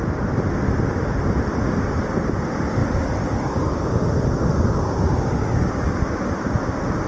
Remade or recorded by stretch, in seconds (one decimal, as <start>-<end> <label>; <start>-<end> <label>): 0.0-7.1 recorded